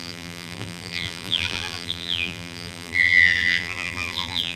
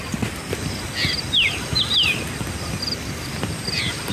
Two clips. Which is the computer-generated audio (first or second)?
first